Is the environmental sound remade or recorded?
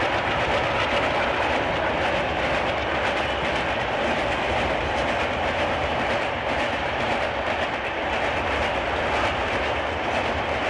recorded